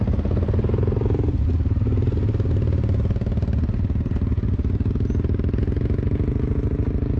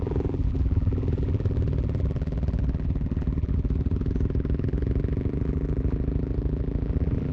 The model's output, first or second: second